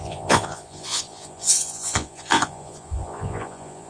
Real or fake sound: fake